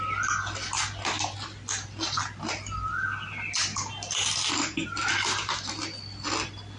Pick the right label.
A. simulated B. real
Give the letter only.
B